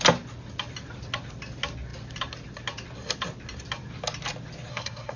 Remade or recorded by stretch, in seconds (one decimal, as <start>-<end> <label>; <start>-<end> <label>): 0.0-4.7 recorded; 4.7-5.2 remade